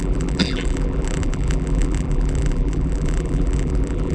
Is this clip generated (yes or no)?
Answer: yes